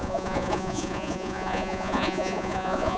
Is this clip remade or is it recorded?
remade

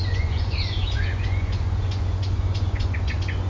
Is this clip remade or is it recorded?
remade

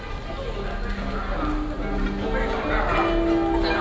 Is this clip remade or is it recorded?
recorded